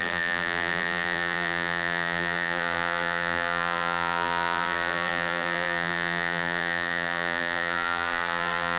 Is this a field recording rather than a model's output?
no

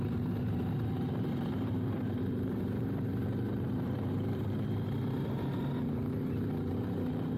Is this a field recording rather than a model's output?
no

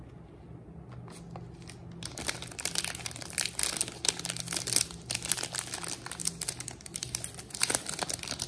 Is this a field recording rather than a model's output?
yes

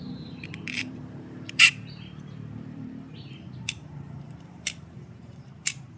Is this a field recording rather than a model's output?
no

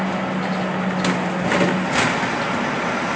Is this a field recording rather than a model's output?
yes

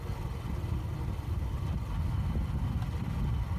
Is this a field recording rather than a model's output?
yes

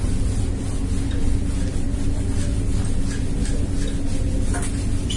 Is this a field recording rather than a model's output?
yes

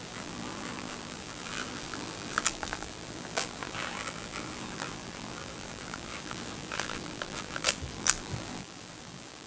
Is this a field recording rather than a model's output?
no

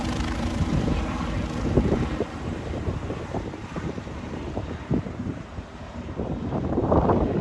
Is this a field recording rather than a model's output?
no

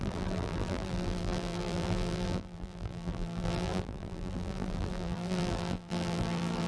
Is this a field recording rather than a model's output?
no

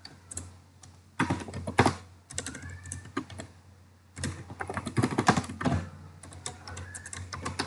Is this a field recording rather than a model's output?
yes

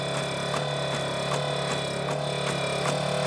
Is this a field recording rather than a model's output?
yes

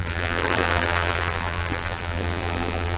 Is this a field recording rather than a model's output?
no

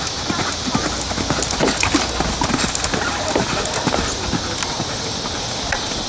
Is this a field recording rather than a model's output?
yes